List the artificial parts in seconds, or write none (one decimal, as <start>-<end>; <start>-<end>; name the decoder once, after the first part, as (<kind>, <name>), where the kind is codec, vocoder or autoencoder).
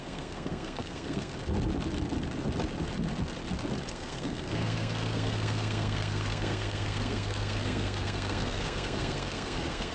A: 0.0-1.3 (codec, SNAC); 3.9-9.9